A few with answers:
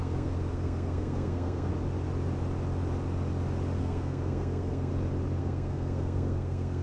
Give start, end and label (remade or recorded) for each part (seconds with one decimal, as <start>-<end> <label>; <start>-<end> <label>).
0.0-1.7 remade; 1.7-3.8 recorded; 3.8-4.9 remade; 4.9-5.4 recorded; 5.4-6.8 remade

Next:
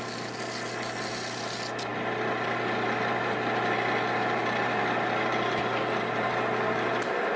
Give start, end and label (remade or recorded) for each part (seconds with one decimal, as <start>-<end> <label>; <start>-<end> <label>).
0.0-7.4 recorded

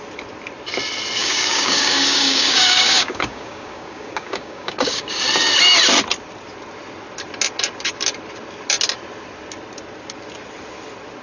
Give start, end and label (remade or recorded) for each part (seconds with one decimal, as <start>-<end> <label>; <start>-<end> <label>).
0.0-1.2 recorded; 1.2-5.1 remade; 5.1-11.2 recorded

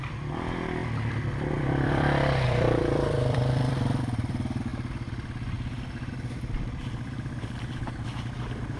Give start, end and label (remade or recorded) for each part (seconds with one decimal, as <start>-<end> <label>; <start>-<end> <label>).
0.0-4.7 remade; 4.7-6.1 recorded; 6.1-8.8 remade